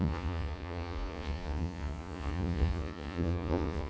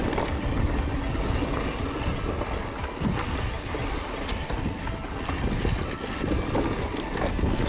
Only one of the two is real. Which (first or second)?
second